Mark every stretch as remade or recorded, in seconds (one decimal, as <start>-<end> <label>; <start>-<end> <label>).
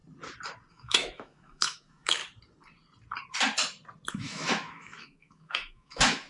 0.0-0.7 recorded; 0.7-2.2 remade; 2.2-4.1 recorded; 4.1-6.3 remade